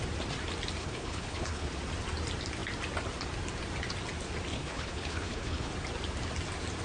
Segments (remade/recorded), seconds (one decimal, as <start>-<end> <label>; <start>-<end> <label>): 0.0-0.8 recorded; 0.8-1.7 remade; 1.7-4.5 recorded; 4.5-5.7 remade; 5.7-6.8 recorded